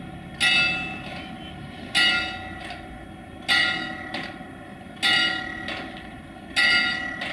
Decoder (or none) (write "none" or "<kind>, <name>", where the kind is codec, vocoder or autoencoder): none